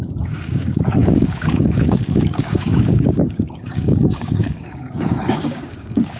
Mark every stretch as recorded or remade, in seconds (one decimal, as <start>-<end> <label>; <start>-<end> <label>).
0.0-6.2 remade